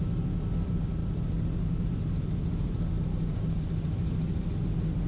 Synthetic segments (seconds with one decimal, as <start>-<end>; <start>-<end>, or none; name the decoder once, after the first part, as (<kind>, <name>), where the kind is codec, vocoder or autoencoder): 3.1-3.6 (codec, DAC)